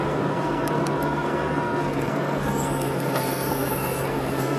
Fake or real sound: fake